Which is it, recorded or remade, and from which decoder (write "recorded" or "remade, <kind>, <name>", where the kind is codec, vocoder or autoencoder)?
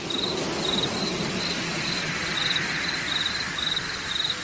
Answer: recorded